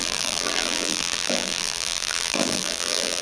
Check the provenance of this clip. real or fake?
fake